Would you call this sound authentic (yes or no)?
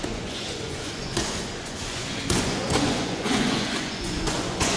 no